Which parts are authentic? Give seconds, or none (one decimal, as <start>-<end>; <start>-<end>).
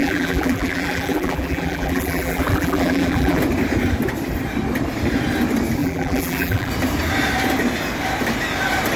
3.4-5.8; 6.7-9.0